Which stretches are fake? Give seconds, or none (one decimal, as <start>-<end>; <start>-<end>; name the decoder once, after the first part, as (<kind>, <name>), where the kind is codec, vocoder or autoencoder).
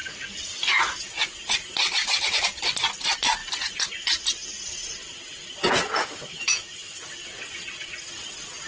6.0-7.0 (autoencoder, DAC-VAE)